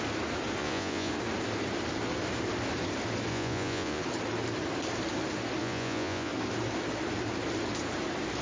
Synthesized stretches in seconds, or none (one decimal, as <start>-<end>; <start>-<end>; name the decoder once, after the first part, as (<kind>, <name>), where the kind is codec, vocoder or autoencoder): 0.6-1.1 (vocoder, Vocos); 3.3-4.0; 5.6-6.3